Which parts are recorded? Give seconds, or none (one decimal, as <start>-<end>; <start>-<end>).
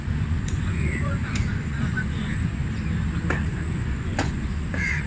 2.6-3.4